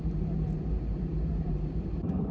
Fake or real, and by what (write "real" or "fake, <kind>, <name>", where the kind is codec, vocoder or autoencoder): fake, vocoder, BigVGAN v2